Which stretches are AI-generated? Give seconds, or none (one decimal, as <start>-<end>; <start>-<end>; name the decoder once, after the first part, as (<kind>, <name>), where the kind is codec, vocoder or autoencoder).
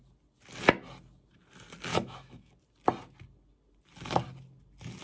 1.9-2.5 (autoencoder, DAC-VAE)